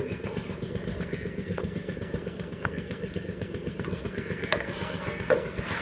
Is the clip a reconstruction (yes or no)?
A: yes